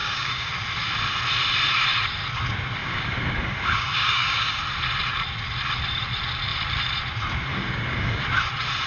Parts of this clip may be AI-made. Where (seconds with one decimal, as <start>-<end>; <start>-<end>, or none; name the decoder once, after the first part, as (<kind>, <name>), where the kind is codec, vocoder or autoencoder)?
0.0-0.5 (codec, DAC); 2.8-4.6; 7.5-8.2